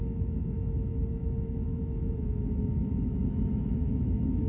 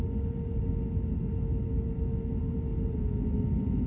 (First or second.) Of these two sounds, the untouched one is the second